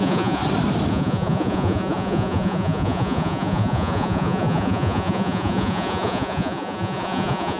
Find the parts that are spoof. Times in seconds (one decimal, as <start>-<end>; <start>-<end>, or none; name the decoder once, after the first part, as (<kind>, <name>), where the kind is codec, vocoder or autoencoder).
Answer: 0.0-0.4 (vocoder, Vocos); 0.9-7.6